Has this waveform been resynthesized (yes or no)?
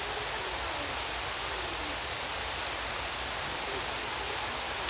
no